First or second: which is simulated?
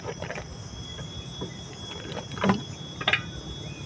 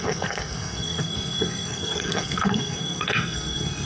second